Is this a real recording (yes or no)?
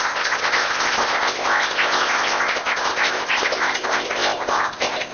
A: no